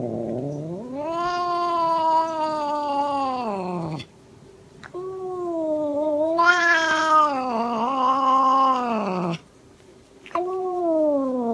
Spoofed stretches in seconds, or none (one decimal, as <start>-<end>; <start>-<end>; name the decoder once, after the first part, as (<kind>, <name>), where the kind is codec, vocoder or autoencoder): 5.9-7.0 (vocoder, BigVGAN v2); 9.4-10.8